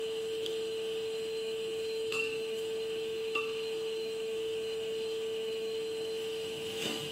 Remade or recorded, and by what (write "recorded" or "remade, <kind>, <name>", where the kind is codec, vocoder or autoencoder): remade, autoencoder, DAC-VAE